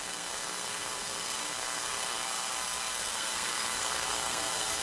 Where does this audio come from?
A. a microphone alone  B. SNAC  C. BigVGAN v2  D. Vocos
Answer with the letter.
B